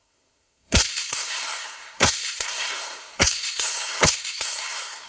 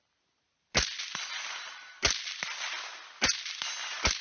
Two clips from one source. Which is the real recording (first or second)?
second